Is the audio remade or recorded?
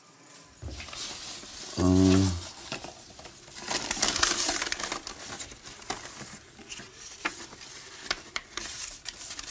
recorded